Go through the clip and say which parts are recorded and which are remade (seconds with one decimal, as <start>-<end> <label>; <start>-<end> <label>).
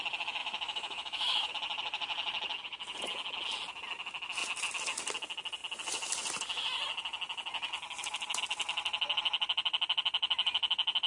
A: 0.0-0.4 recorded; 0.4-1.5 remade; 1.5-11.1 recorded